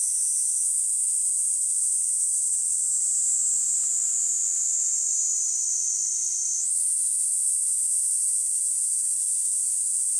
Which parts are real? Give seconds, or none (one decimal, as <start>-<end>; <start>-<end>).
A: 0.0-10.2